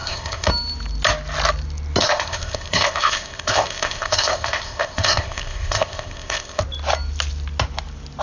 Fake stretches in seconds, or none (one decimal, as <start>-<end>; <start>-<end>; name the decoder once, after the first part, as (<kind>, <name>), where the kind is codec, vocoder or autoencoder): 0.0-0.5 (codec, ZipCodec); 2.0-6.6